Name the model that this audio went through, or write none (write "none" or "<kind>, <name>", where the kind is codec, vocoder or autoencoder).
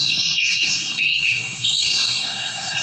codec, SNAC